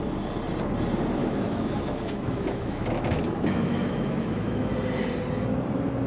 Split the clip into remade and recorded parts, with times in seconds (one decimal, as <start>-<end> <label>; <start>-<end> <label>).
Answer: 0.0-1.2 recorded; 1.2-4.7 remade; 4.7-6.1 recorded